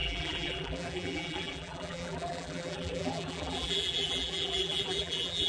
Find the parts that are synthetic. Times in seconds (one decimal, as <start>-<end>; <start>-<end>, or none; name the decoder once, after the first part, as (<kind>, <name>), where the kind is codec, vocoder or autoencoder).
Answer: 0.0-5.5 (vocoder, BigVGAN v2)